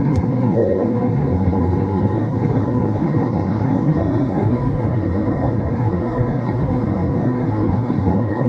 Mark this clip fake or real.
fake